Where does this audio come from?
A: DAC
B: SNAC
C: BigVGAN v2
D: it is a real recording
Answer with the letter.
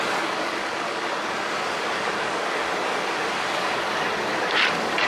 A